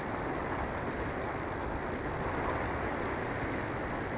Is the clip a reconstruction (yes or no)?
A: no